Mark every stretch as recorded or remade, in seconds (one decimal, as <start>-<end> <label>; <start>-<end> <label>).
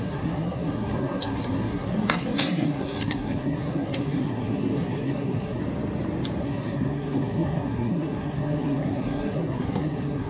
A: 0.0-5.6 remade; 5.6-6.4 recorded; 6.4-10.3 remade